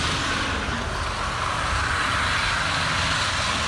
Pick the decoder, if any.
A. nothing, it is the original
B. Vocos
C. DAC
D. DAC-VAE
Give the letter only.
A